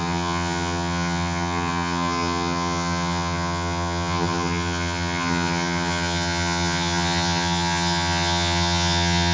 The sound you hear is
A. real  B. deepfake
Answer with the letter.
B